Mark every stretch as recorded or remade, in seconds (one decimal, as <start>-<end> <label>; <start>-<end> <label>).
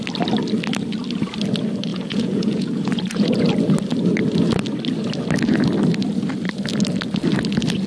0.0-1.9 recorded; 1.9-3.5 remade; 3.5-7.9 recorded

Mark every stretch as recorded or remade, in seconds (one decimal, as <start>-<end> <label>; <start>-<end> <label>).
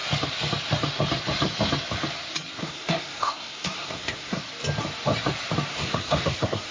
0.0-2.6 recorded; 2.6-4.4 remade; 4.4-5.7 recorded; 5.7-6.7 remade